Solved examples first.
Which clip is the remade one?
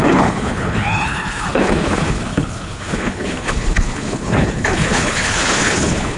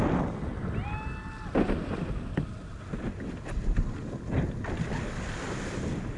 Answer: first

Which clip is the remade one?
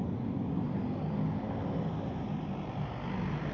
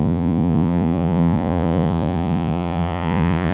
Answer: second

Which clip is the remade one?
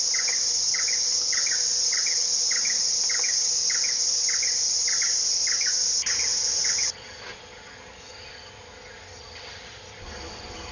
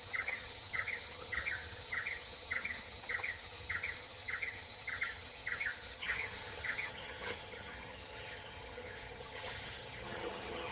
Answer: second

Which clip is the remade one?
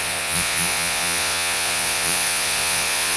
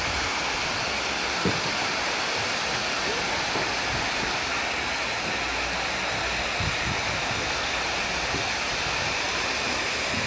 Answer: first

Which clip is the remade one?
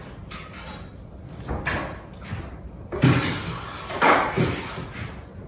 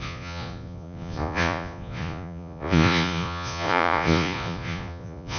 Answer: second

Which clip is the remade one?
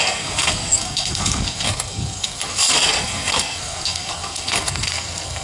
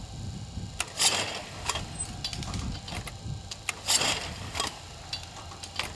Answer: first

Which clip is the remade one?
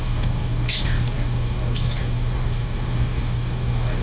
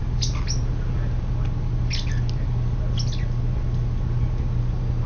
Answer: first